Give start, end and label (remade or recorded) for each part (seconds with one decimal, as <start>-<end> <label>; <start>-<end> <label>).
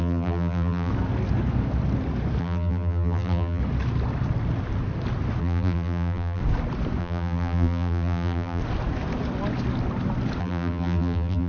0.0-0.9 remade; 0.9-2.4 recorded; 2.4-3.6 remade; 3.6-5.4 recorded; 5.4-6.4 remade; 6.4-7.0 recorded; 7.0-8.6 remade; 8.6-10.4 recorded; 10.4-11.5 remade